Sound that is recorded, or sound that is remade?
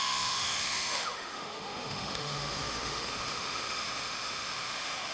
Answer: remade